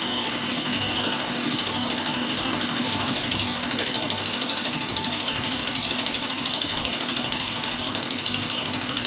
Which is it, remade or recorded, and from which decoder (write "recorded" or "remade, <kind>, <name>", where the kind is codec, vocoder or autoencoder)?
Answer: remade, codec, DAC